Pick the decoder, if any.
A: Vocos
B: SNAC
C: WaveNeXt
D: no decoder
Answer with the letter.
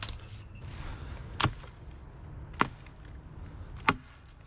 D